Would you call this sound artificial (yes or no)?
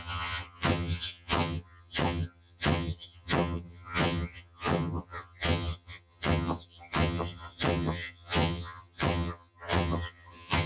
yes